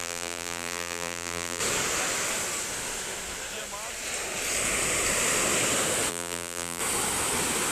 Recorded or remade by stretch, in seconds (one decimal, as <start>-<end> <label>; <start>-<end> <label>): 0.0-1.6 remade; 1.6-6.1 recorded; 6.1-6.8 remade; 6.8-7.7 recorded